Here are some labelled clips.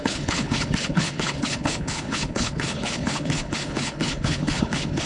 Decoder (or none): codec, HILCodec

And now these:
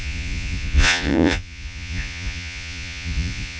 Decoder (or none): vocoder, Vocos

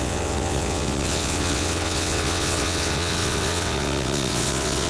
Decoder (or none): vocoder, WaveNeXt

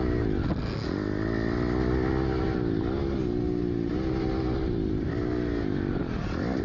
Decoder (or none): none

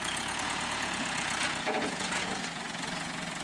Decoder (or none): vocoder, Vocos